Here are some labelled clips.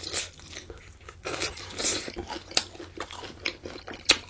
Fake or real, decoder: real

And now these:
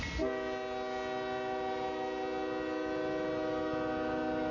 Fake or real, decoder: real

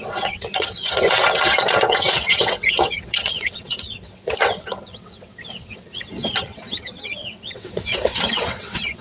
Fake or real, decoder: fake, vocoder, WaveNeXt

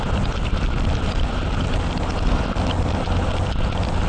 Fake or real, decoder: real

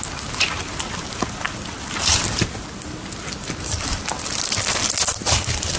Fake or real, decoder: real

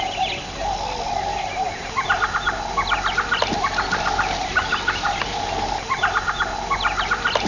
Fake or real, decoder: real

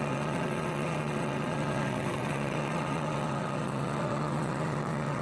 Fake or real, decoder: fake, vocoder, WaveNeXt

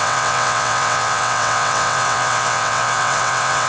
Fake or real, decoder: fake, vocoder, WaveNeXt